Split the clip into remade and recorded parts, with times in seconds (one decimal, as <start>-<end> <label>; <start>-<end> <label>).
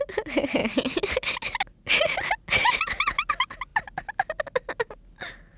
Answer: 0.0-5.6 recorded